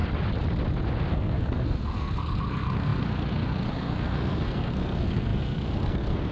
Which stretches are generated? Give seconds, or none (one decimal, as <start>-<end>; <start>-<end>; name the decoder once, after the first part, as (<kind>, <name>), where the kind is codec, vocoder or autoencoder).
1.1-6.3 (codec, SNAC)